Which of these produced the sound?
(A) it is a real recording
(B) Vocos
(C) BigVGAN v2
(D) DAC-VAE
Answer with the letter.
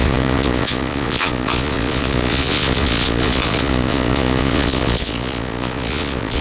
B